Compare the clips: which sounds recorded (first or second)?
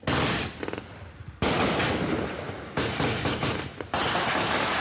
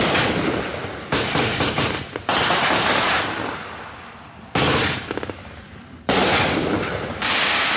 first